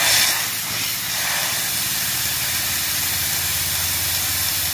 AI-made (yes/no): no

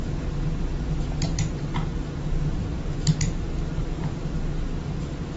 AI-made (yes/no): no